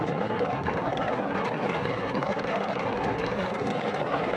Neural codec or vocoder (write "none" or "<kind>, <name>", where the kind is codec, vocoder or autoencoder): codec, SNAC